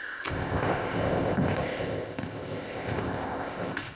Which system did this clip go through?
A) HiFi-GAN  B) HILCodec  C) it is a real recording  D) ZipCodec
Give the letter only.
D